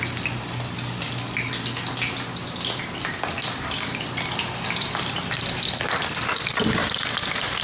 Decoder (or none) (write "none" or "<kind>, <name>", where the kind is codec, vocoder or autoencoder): none